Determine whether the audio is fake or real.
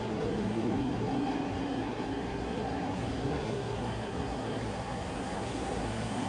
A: fake